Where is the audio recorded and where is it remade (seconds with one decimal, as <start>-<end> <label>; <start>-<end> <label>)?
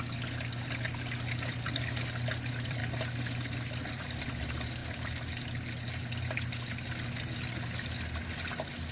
0.0-2.8 remade; 2.8-3.9 recorded; 3.9-4.8 remade; 4.8-7.2 recorded; 7.2-8.9 remade